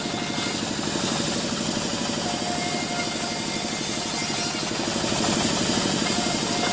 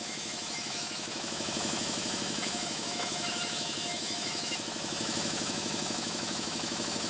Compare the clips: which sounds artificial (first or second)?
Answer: second